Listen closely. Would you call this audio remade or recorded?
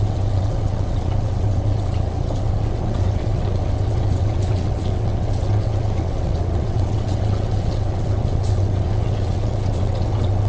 remade